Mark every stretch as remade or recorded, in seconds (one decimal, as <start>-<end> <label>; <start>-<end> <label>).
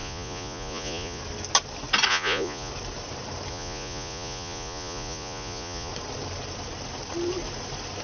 0.0-1.2 remade; 1.2-2.1 recorded; 2.1-2.7 remade; 2.7-3.5 recorded; 3.5-5.9 remade; 5.9-8.0 recorded